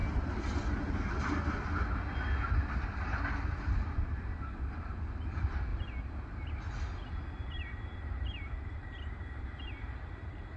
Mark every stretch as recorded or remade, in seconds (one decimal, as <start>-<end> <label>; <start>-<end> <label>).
0.0-3.4 recorded; 3.4-5.7 remade; 5.7-7.5 recorded; 7.5-10.6 remade